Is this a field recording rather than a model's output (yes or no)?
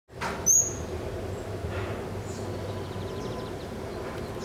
yes